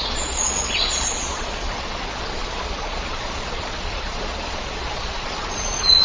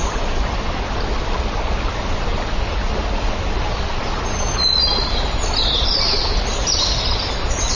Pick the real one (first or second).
second